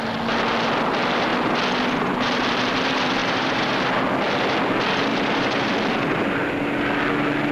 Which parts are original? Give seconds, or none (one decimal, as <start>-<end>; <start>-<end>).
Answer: 0.0-3.2; 3.7-5.1; 5.7-7.5